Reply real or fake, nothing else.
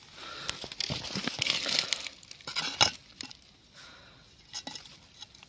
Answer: real